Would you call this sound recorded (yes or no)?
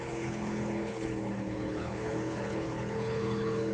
no